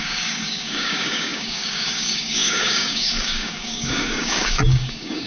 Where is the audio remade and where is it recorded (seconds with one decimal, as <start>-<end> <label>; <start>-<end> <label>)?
0.0-5.3 remade